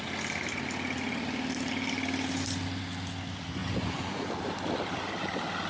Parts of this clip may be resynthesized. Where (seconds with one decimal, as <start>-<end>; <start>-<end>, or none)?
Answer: 3.6-4.3